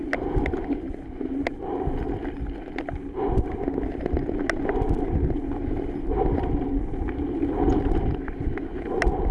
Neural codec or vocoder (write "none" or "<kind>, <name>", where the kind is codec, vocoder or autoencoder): none